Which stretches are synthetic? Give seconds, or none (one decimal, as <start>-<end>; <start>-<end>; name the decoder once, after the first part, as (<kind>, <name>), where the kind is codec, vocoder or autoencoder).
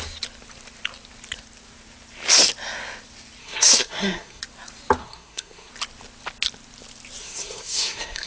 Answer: 3.4-4.4 (codec, SNAC); 5.0-5.7; 7.2-8.3